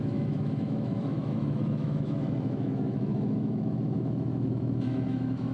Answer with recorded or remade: remade